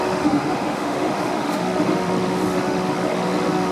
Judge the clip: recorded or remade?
remade